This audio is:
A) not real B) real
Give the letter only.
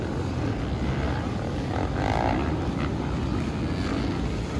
B